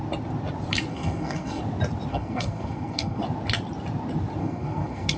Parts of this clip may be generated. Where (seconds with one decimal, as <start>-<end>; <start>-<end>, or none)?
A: 0.9-1.6; 2.1-3.2; 4.4-5.2